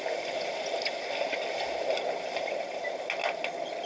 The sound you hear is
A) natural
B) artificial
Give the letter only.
A